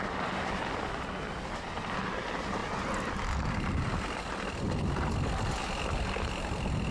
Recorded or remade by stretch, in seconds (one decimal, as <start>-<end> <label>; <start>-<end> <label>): 0.0-6.9 recorded